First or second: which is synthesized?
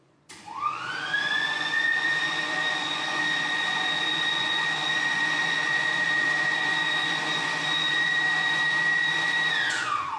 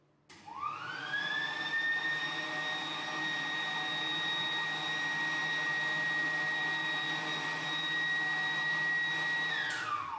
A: first